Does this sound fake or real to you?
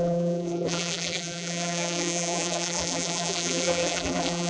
fake